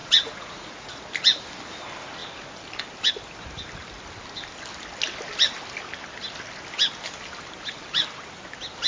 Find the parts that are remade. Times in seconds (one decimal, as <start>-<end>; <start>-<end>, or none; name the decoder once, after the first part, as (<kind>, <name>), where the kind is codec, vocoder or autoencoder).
0.0-1.0 (vocoder, Vocos)